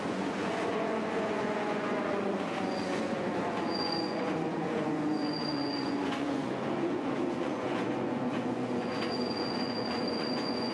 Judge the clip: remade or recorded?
remade